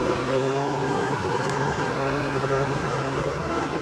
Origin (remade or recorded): remade